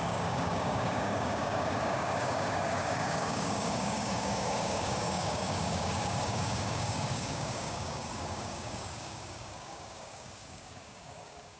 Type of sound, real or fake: fake